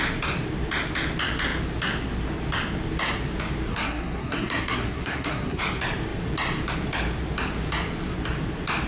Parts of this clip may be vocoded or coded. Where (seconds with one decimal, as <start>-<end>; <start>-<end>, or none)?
3.7-5.6

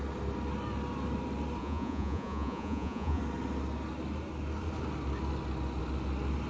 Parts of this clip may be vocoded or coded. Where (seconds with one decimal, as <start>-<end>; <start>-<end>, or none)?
1.6-3.2

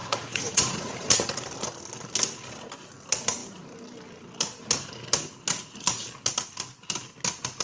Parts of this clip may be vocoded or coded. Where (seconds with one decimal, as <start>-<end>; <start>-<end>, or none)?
0.0-1.1